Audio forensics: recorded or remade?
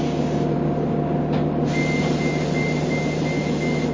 recorded